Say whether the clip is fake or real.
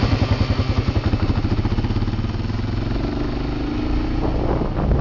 real